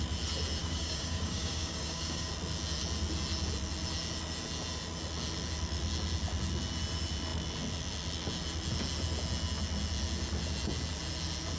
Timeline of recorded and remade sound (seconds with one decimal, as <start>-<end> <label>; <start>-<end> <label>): 0.0-0.6 recorded; 0.6-2.3 remade; 2.3-11.6 recorded